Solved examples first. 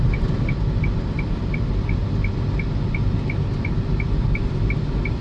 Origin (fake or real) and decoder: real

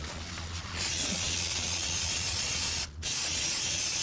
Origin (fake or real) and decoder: fake, vocoder, Vocos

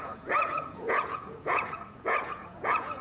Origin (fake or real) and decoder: fake, vocoder, Vocos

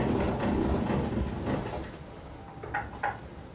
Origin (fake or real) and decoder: real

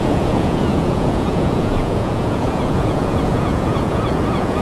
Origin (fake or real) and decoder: fake, vocoder, Vocos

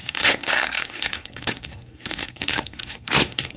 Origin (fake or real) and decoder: fake, codec, SNAC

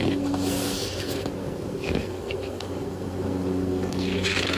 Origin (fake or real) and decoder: fake, codec, SNAC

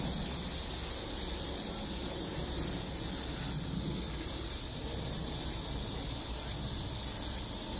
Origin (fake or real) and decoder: real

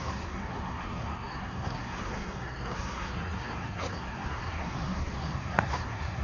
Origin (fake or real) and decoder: fake, codec, SNAC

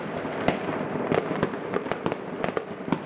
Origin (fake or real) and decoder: real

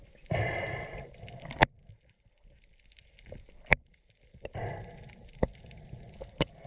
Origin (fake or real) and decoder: real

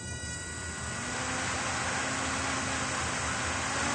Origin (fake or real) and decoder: real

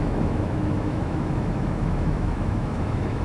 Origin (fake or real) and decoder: fake, autoencoder, DAC-VAE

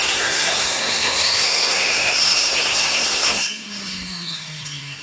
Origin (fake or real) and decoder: fake, codec, SNAC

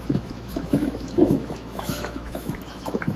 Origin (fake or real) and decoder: fake, autoencoder, DAC-VAE